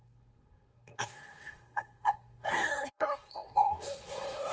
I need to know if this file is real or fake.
fake